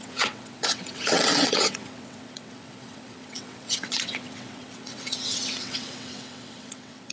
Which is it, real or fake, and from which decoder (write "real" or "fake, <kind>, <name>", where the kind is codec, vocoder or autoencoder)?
fake, vocoder, WaveNeXt